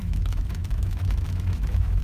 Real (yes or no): no